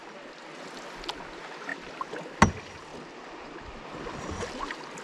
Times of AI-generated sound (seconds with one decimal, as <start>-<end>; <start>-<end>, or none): none